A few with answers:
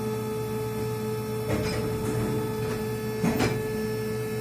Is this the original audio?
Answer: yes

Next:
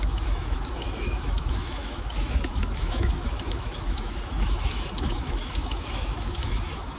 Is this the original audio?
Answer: no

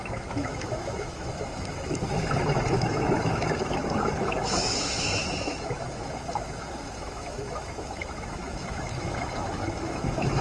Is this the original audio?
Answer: no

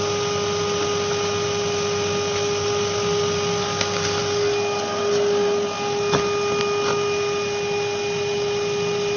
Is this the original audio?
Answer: yes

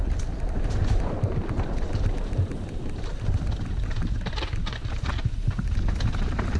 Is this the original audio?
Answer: yes